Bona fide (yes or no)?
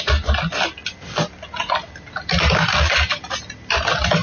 yes